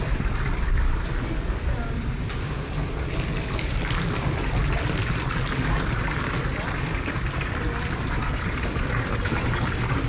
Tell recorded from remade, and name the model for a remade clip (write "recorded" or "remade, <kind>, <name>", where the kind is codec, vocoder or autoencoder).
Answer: remade, vocoder, BigVGAN v2